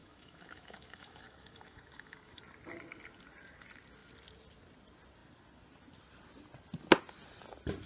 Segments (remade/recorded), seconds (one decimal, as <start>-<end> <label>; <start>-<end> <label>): 0.0-2.4 remade; 2.4-7.9 recorded